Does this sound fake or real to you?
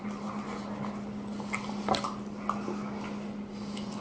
real